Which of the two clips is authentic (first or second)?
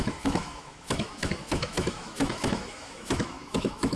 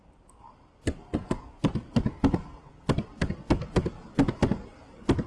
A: second